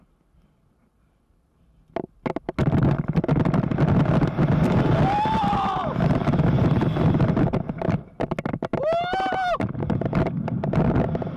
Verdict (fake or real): real